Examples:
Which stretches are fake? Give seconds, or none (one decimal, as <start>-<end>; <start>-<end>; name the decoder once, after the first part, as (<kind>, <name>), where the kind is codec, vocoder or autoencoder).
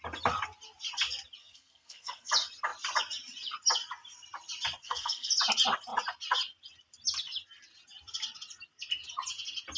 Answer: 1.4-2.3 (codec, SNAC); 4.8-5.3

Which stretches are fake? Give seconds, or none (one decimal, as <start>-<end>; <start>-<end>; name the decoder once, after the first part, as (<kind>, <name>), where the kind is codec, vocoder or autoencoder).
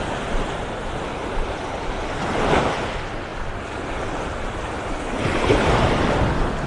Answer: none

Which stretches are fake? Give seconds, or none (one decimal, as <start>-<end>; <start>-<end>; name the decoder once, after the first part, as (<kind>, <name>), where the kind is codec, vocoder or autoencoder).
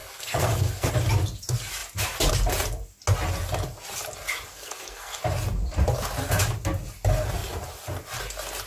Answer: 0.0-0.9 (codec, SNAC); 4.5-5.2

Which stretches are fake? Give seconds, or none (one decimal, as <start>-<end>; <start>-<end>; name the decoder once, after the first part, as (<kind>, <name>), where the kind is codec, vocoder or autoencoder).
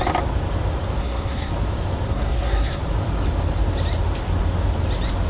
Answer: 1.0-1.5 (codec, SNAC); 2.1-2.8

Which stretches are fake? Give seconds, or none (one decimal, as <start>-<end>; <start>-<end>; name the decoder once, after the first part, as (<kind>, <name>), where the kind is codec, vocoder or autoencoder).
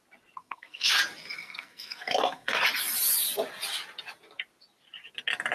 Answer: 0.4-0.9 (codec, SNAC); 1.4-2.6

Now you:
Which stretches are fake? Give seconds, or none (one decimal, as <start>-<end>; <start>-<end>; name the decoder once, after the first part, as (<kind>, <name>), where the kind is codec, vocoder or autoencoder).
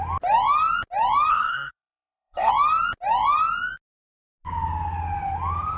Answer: 1.3-2.5 (codec, SNAC)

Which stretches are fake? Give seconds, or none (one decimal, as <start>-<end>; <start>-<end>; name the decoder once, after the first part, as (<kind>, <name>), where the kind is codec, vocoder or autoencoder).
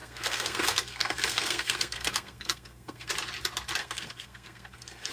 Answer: 0.0-3.1 (codec, SNAC); 3.8-5.1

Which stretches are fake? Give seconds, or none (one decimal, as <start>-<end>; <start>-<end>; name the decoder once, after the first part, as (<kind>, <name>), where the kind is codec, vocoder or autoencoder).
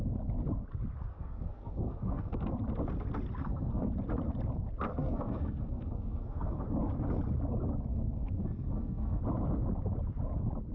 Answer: 1.1-2.5 (codec, SNAC); 3.4-3.9; 4.9-6.6; 7.9-9.2